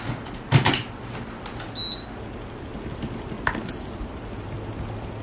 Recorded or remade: recorded